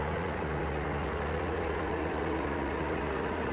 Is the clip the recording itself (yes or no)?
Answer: no